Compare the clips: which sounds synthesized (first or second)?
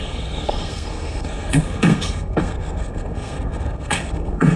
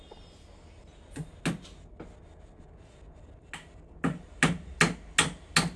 first